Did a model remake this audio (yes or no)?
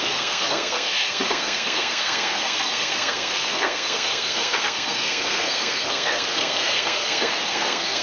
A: yes